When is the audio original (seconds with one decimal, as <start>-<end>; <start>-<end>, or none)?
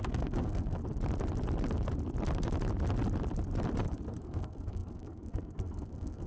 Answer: 0.8-4.2